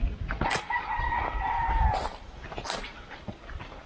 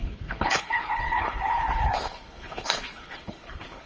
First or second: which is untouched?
first